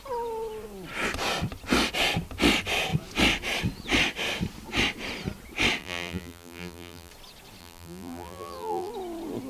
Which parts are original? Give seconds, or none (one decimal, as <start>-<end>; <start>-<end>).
0.0-5.8; 7.1-7.6; 8.9-9.5